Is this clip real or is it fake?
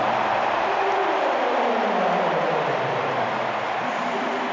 real